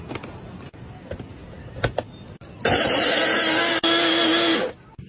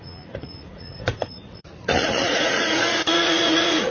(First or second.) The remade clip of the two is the second